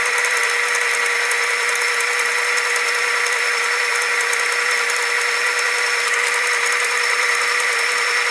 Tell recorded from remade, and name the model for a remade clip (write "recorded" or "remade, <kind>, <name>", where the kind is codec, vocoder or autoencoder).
remade, vocoder, BigVGAN v2